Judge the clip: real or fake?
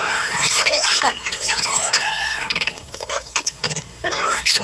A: fake